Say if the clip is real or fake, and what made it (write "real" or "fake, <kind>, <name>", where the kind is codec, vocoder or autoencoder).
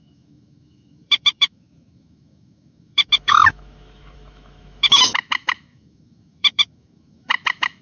fake, autoencoder, DAC-VAE